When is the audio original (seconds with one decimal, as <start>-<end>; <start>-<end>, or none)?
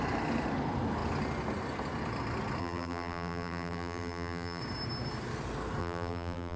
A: 0.0-2.6; 4.6-5.8